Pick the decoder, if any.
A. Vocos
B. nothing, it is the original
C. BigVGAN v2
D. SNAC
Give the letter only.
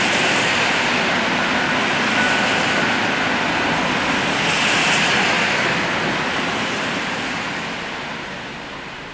B